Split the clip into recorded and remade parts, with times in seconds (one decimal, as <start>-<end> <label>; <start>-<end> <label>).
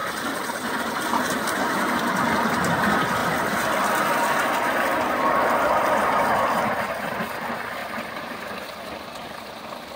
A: 0.0-3.2 recorded; 3.2-6.8 remade; 6.8-7.8 recorded; 7.8-8.9 remade; 8.9-10.0 recorded